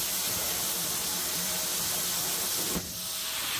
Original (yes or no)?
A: yes